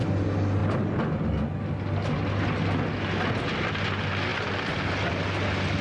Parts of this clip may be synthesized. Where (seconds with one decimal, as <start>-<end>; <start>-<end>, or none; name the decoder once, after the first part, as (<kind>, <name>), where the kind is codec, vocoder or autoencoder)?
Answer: none